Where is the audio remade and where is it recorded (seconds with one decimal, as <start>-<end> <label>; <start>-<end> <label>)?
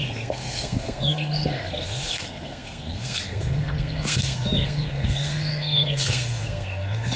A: 0.0-7.2 remade